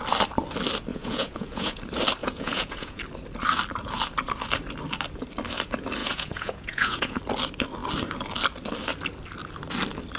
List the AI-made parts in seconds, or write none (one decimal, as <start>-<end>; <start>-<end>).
0.9-1.8; 2.2-3.0; 6.0-7.2